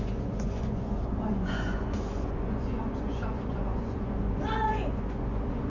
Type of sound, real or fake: fake